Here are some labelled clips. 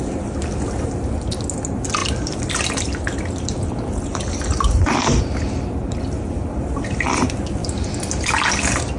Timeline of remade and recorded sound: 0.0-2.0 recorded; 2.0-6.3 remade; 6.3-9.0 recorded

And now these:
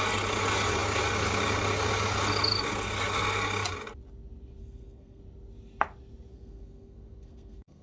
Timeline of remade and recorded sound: 0.0-4.6 recorded; 4.6-5.2 remade; 5.2-6.3 recorded; 6.3-7.8 remade

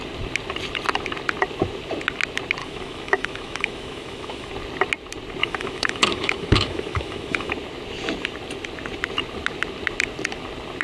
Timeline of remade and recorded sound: 0.0-2.6 recorded; 2.6-4.5 remade; 4.5-5.4 recorded; 5.4-7.5 remade; 7.5-10.8 recorded

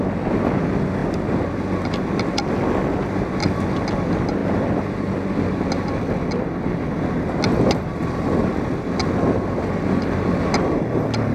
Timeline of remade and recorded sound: 0.0-11.3 recorded

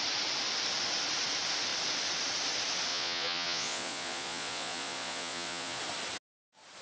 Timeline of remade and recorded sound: 0.0-2.9 recorded; 2.9-5.8 remade; 5.8-6.8 recorded

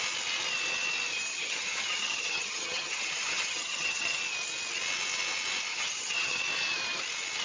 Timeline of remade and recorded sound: 0.0-1.3 recorded; 1.3-4.2 remade; 4.2-5.7 recorded; 5.7-6.4 remade; 6.4-7.4 recorded

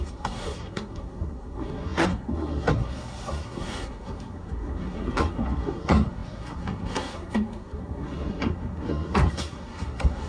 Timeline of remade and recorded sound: 0.0-10.3 remade

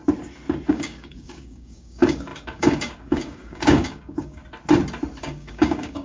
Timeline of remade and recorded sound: 0.0-0.7 recorded; 0.7-4.4 remade; 4.4-5.2 recorded; 5.2-6.0 remade